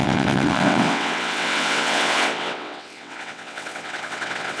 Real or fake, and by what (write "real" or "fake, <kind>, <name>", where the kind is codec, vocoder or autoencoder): fake, vocoder, WaveNeXt